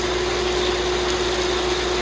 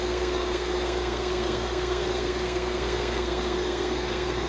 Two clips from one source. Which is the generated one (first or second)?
second